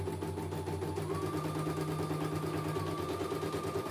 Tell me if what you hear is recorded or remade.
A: recorded